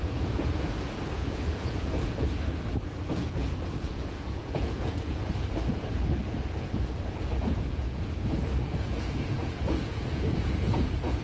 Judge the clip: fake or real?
fake